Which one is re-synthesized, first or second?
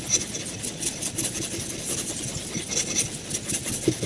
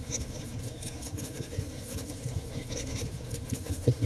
second